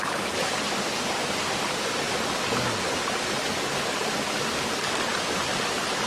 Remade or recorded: recorded